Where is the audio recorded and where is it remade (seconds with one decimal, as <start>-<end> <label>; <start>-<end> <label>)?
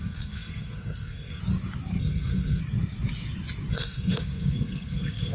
0.0-1.4 remade; 1.4-2.0 recorded; 2.0-2.6 remade; 2.6-3.7 recorded; 3.7-5.3 remade